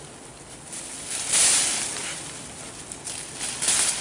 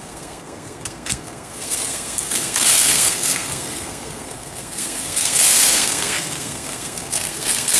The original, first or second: first